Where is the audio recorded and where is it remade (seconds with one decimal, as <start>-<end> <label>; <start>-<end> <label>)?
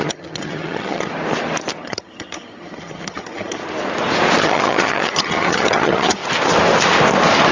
0.0-1.1 remade; 1.1-1.8 recorded; 1.8-3.6 remade; 3.6-4.4 recorded; 4.4-6.2 remade; 6.2-7.5 recorded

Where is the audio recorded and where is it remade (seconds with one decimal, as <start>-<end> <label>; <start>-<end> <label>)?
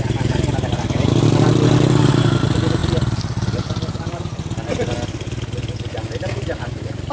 0.0-7.1 recorded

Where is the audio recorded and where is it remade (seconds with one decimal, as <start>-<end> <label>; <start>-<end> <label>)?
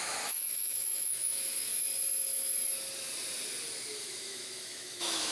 0.0-1.7 remade; 1.7-4.0 recorded; 4.0-5.3 remade